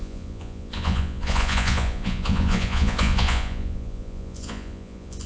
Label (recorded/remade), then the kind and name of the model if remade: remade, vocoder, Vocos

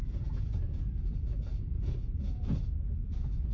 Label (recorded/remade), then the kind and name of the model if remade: remade, vocoder, Vocos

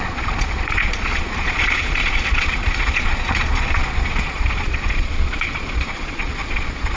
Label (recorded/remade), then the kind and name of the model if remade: remade, vocoder, Vocos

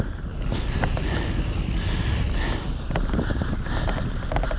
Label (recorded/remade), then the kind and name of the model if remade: recorded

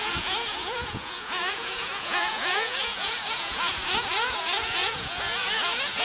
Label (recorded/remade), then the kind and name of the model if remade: remade, vocoder, Vocos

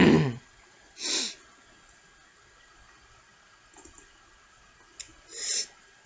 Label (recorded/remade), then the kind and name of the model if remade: recorded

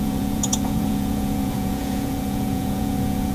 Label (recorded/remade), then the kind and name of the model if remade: remade, vocoder, Vocos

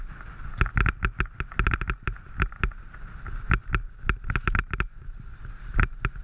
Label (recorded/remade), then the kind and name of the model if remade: recorded